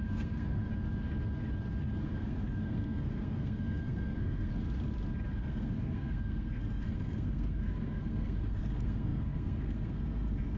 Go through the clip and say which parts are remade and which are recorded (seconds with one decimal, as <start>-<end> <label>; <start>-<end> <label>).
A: 0.0-0.7 remade; 0.7-2.0 recorded; 2.0-4.5 remade; 4.5-5.3 recorded; 5.3-10.6 remade